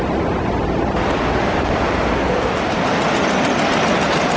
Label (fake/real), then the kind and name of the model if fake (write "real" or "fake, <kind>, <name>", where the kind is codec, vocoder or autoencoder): real